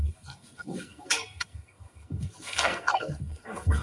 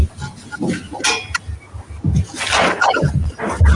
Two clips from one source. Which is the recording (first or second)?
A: second